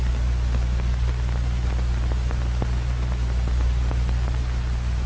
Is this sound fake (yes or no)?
no